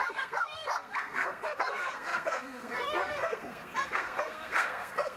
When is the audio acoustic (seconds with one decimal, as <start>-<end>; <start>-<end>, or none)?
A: none